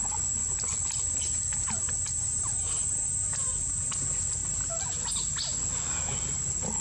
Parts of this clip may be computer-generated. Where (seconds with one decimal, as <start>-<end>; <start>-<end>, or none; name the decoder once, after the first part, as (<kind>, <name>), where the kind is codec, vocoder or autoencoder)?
none